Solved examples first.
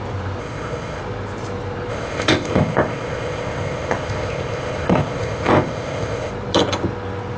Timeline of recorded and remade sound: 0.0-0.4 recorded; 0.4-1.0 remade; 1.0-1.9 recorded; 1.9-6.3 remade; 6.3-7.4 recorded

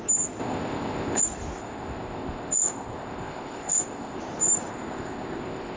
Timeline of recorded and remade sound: 0.0-0.4 recorded; 0.4-1.2 remade; 1.2-1.6 recorded; 1.6-4.2 remade; 4.2-4.7 recorded; 4.7-5.8 remade